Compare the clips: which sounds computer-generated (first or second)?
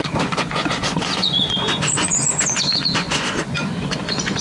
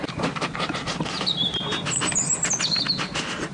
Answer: first